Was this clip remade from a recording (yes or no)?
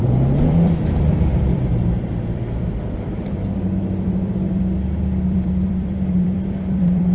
yes